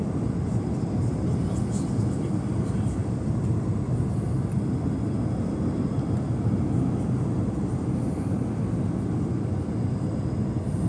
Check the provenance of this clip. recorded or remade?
recorded